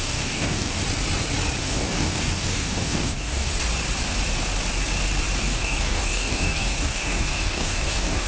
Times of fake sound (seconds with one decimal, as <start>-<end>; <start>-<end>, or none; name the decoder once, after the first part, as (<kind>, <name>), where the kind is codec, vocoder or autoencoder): 0.0-0.8 (codec, DAC); 1.6-3.5; 5.4-8.3